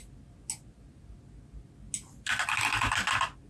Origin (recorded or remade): recorded